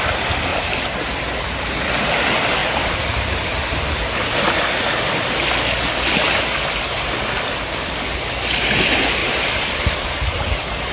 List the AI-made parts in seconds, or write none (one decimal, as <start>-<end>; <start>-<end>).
0.5-1.9; 2.6-4.5; 9.2-10.9